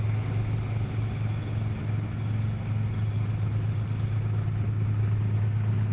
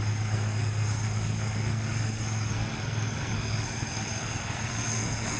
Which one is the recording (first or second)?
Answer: first